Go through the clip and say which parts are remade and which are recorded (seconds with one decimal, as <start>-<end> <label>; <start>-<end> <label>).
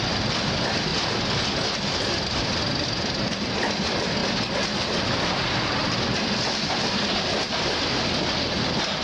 0.0-9.0 recorded